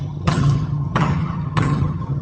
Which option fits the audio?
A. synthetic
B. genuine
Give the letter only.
A